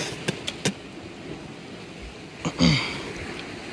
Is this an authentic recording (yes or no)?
yes